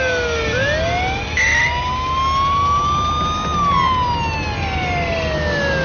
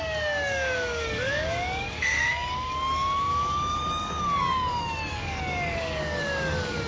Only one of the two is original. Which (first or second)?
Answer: first